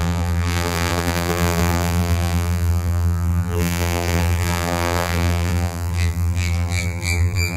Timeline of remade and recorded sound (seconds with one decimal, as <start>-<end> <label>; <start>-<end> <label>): 0.0-7.6 remade